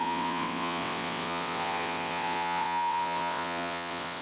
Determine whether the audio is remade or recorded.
remade